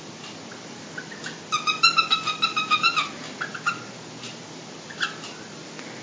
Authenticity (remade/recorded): recorded